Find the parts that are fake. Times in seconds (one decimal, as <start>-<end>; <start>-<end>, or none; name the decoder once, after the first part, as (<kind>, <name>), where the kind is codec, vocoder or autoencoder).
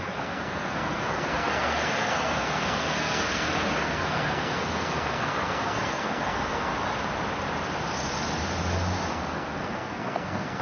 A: 0.0-6.7 (codec, SNAC); 9.1-10.6